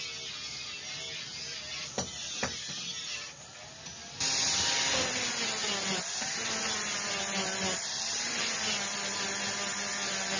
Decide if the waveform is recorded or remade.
recorded